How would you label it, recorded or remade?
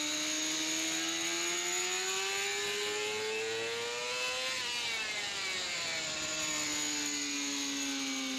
recorded